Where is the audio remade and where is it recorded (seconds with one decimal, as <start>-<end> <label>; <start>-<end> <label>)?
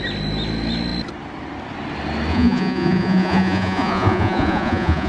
0.0-2.3 recorded; 2.3-5.1 remade